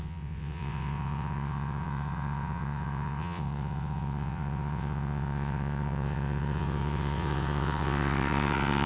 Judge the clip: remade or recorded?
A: remade